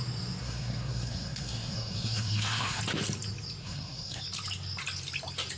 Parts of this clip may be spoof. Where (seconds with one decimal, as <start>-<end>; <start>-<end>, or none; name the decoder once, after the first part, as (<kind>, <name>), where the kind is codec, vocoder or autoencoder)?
0.4-2.8 (codec, SNAC); 3.6-4.2